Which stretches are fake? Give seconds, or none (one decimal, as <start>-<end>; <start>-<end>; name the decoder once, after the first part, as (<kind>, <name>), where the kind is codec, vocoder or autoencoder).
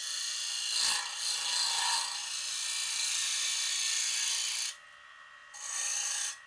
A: none